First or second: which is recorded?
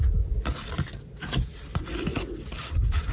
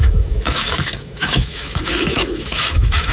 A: first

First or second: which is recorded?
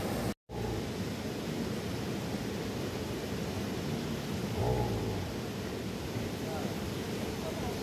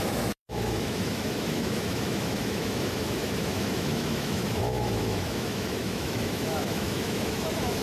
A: first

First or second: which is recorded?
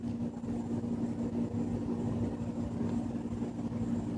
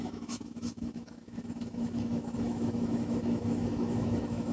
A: first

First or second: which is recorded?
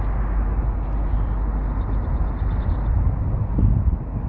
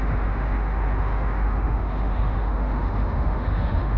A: first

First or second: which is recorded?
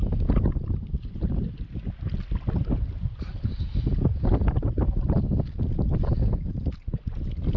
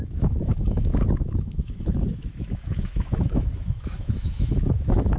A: first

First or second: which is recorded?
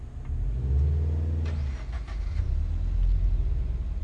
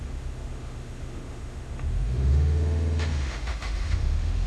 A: first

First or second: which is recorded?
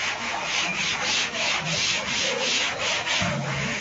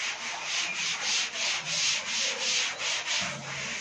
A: second